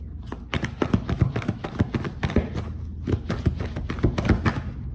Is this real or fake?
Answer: real